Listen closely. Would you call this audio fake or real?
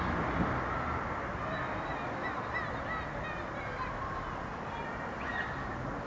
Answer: real